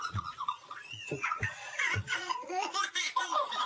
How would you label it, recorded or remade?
remade